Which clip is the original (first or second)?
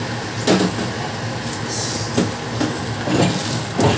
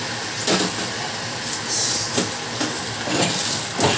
first